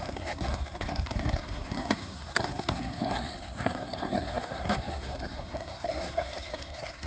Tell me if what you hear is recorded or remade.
remade